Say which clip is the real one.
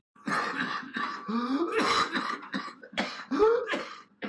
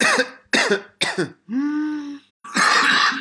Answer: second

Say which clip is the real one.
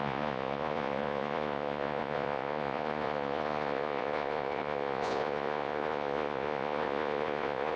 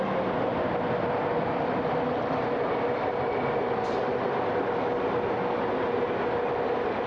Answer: second